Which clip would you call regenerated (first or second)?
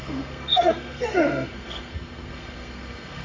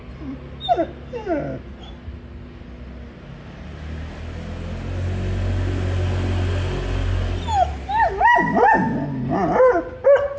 first